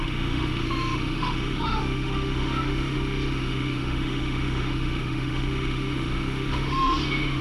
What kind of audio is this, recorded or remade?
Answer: remade